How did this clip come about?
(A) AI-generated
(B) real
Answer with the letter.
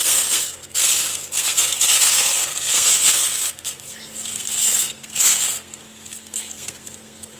A